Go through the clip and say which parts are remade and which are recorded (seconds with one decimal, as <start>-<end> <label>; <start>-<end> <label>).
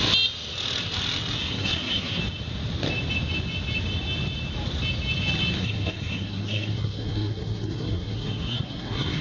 0.0-1.4 recorded; 1.4-2.2 remade; 2.2-5.6 recorded; 5.6-9.2 remade